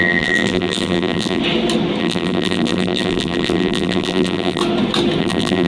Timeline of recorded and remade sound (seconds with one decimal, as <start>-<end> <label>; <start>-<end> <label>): 0.0-1.4 remade; 1.4-2.0 recorded; 2.0-4.6 remade; 4.6-5.2 recorded; 5.2-5.7 remade